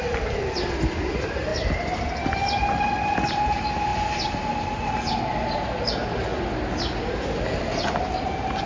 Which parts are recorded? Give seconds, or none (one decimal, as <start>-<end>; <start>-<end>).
0.0-8.7